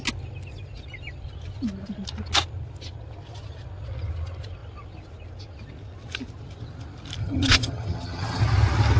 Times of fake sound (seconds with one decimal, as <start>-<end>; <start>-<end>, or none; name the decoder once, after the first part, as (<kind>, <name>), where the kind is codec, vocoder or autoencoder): 7.2-8.4 (vocoder, HiFi-GAN)